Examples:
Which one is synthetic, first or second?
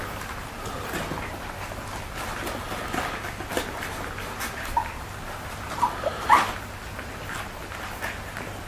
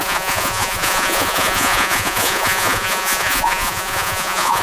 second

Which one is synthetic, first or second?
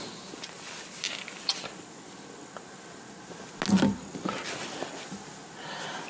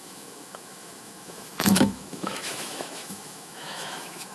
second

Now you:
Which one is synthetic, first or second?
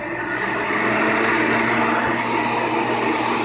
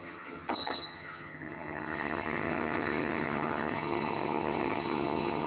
second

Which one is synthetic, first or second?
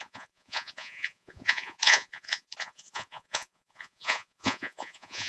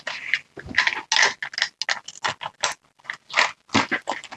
first